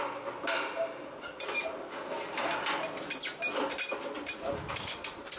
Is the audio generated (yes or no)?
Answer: no